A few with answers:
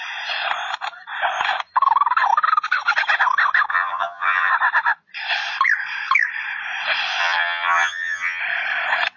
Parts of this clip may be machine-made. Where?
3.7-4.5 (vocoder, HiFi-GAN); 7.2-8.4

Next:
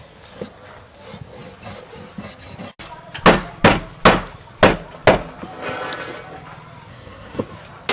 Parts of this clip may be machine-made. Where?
6.9-7.4 (codec, SNAC)

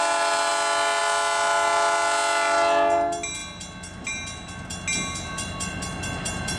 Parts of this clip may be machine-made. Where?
none

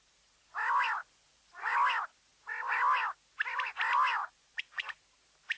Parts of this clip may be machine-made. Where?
1.0-1.7 (vocoder, Vocos); 4.2-4.9

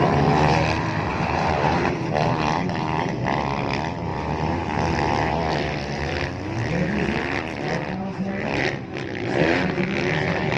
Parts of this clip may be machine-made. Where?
1.1-3.1 (vocoder, BigVGAN v2)

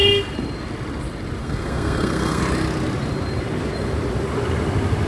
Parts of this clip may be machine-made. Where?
1.4-2.4 (codec, SNAC)